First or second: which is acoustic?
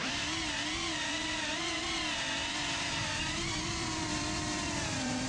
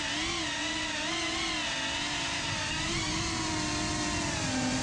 second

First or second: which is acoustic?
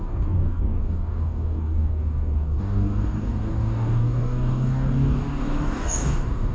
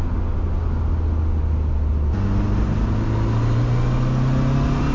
second